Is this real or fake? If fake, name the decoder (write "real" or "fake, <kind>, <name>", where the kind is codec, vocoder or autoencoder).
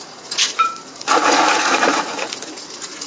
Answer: fake, vocoder, Vocos